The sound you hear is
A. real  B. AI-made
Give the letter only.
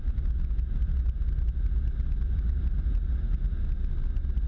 A